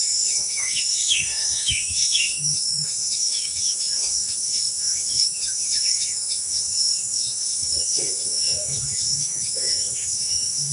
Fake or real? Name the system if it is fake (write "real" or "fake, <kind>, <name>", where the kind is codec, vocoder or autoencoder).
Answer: fake, autoencoder, DAC-VAE